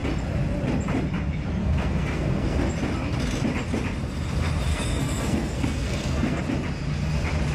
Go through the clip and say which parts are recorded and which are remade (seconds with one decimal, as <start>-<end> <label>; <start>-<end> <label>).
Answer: 0.0-1.6 recorded; 1.6-2.7 remade; 2.7-4.7 recorded; 4.7-6.4 remade; 6.4-7.5 recorded